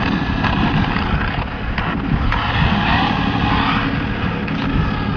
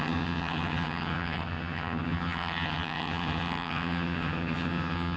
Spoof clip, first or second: second